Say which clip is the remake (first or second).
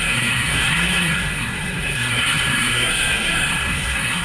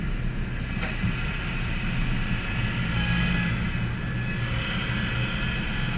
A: first